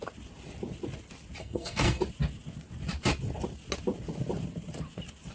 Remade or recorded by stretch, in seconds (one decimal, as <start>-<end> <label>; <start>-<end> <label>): 0.0-1.4 recorded; 1.4-2.0 remade; 2.0-5.3 recorded